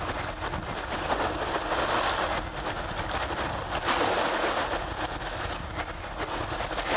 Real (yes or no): yes